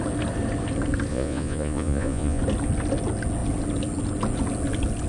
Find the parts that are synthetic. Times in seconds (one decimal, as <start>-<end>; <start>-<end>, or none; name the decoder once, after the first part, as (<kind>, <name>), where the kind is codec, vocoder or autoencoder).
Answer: 1.1-2.4 (vocoder, Vocos)